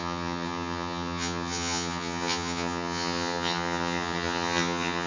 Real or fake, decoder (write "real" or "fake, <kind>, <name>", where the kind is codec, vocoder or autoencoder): fake, vocoder, HiFi-GAN